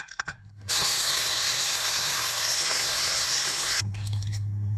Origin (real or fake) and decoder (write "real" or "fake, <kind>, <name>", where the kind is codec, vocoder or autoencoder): fake, codec, SNAC